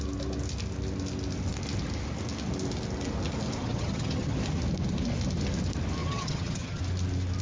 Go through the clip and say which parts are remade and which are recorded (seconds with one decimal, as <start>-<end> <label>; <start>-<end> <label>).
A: 0.0-3.6 recorded; 3.6-4.4 remade; 4.4-6.0 recorded; 6.0-6.8 remade; 6.8-7.4 recorded